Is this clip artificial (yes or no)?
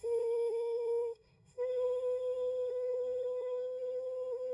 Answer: yes